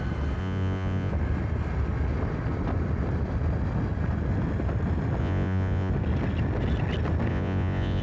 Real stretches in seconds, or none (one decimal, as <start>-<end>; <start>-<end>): 0.0-0.4; 1.1-5.2; 5.9-7.3